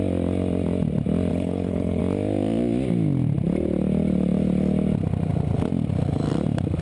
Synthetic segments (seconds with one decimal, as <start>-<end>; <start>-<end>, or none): 1.3-2.0